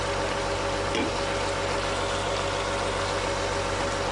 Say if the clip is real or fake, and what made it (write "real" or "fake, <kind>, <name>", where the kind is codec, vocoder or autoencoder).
real